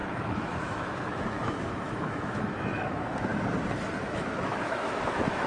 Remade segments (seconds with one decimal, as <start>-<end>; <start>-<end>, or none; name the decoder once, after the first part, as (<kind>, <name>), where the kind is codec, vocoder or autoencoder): 0.0-3.3 (autoencoder, DAC-VAE); 4.0-5.5